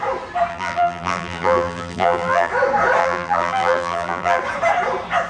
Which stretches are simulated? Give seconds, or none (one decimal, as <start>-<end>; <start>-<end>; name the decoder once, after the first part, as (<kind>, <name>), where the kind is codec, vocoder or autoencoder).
0.5-2.5 (vocoder, BigVGAN v2); 3.0-4.4